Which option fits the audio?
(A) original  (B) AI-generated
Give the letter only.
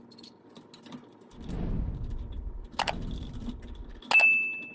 A